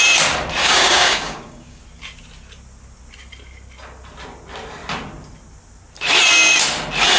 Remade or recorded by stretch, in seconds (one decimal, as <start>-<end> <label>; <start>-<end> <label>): 0.0-0.6 recorded; 0.6-1.8 remade; 1.8-7.2 recorded